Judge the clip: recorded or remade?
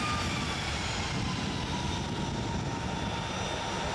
recorded